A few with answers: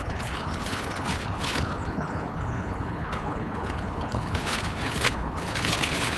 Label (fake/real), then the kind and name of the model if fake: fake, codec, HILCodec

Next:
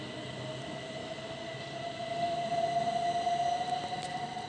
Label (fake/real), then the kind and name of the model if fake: real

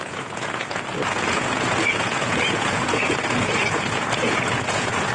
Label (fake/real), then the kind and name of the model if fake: fake, vocoder, Vocos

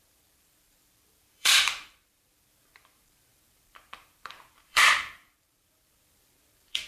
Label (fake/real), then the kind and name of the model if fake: fake, vocoder, BigVGAN v2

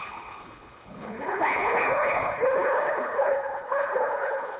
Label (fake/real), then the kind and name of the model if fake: fake, codec, HILCodec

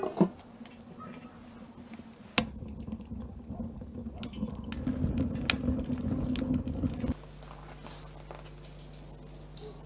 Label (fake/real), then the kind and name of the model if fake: real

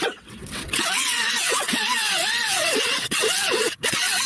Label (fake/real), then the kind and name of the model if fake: fake, vocoder, WaveNeXt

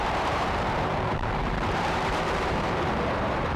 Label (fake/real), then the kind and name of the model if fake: fake, vocoder, BigVGAN v2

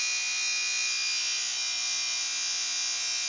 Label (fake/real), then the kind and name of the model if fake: real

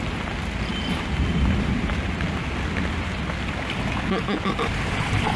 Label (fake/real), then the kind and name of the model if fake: real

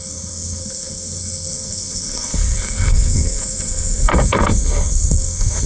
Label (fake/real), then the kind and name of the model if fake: fake, codec, SNAC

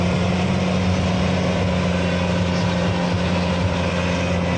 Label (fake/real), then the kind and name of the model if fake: real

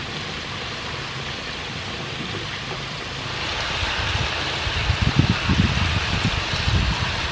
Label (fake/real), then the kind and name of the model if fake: real